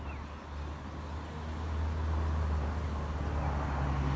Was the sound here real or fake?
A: real